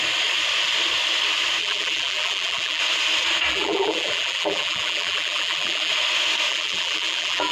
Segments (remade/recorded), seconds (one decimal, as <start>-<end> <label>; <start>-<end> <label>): 0.0-1.6 recorded; 1.6-2.8 remade; 2.8-3.5 recorded; 3.5-5.9 remade; 5.9-6.5 recorded; 6.5-7.5 remade